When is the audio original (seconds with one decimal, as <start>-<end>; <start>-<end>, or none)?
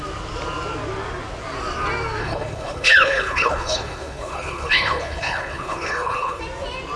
0.0-2.2; 6.4-7.0